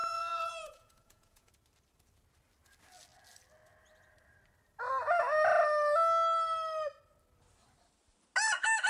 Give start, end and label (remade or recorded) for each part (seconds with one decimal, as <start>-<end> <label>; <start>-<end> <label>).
0.0-1.5 remade; 1.5-8.9 recorded